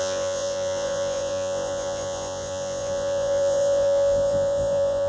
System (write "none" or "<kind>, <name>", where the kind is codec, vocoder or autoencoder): vocoder, Vocos